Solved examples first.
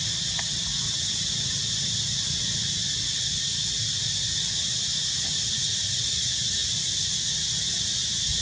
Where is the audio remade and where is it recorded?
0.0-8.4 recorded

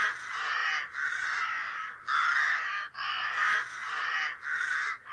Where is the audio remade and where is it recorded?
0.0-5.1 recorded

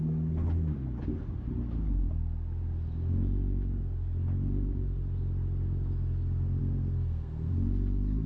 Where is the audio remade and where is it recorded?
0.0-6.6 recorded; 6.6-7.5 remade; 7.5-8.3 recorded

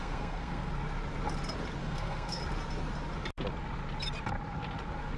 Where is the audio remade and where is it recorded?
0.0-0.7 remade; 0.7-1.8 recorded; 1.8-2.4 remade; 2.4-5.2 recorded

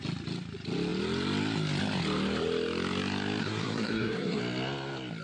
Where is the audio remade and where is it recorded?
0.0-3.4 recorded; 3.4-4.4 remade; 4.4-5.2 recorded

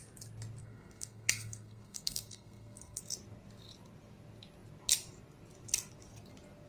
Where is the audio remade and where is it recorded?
0.0-0.6 recorded; 0.6-3.0 remade; 3.0-6.7 recorded